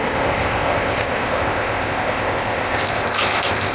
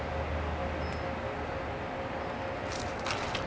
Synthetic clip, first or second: first